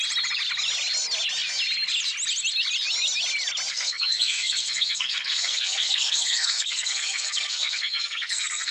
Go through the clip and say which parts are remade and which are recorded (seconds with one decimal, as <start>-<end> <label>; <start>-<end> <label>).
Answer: 0.0-3.7 recorded; 3.7-8.7 remade